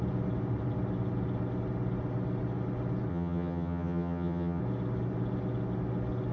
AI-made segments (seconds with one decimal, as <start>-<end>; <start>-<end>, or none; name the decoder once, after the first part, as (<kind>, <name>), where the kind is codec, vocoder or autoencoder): 3.1-4.6 (vocoder, HiFi-GAN)